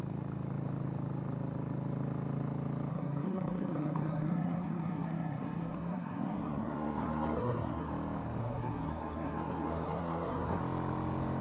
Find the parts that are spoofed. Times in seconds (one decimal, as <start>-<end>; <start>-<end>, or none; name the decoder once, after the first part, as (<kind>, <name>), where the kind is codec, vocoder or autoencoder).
2.9-7.9 (codec, SNAC); 8.4-10.6